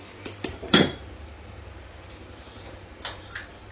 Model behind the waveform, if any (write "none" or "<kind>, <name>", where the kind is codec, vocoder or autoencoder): vocoder, BigVGAN v2